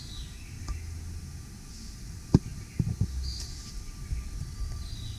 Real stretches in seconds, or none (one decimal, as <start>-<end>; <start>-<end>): 0.0-5.2